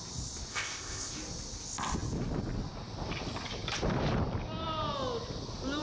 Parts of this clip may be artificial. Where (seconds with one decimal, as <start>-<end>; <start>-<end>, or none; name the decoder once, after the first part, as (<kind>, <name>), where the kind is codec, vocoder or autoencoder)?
0.5-1.1 (codec, ZipCodec)